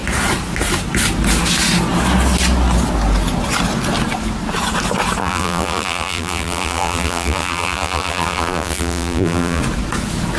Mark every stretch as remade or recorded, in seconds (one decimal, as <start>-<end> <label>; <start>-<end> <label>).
0.0-5.2 recorded; 5.2-9.6 remade; 9.6-10.4 recorded